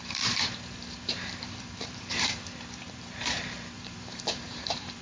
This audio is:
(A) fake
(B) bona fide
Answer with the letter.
A